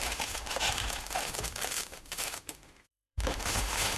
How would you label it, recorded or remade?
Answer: remade